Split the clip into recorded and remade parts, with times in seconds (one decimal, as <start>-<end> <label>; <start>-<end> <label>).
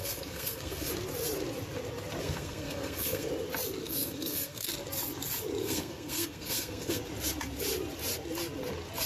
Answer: 0.0-0.9 remade; 0.9-2.2 recorded; 2.2-3.3 remade; 3.3-3.8 recorded; 3.8-4.7 remade; 4.7-5.6 recorded; 5.6-7.0 remade; 7.0-9.1 recorded